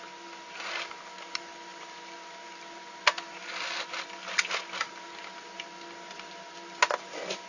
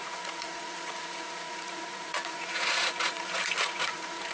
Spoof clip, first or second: second